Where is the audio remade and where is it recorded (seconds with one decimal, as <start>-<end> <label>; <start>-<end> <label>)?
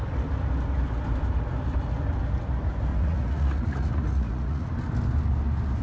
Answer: 0.0-2.9 recorded; 2.9-4.7 remade; 4.7-5.8 recorded